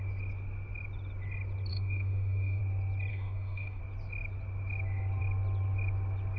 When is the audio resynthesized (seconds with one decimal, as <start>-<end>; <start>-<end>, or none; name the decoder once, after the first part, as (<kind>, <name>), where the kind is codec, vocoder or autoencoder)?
1.7-2.6 (autoencoder, DAC-VAE); 3.1-3.8